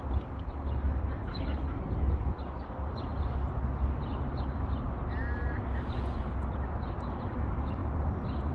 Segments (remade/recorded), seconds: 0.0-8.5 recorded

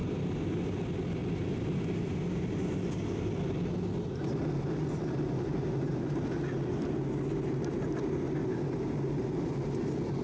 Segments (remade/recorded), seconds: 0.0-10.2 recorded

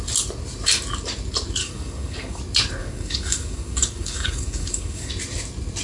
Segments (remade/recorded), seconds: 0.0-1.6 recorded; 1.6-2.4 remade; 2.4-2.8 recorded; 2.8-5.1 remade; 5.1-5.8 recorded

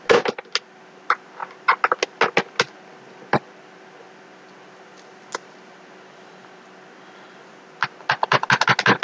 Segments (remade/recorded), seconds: 0.0-9.0 recorded

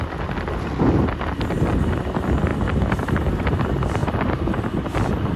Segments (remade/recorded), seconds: 0.0-5.4 recorded

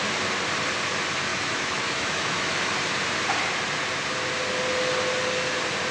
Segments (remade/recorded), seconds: 0.0-1.3 recorded; 1.3-2.6 remade; 2.6-5.9 recorded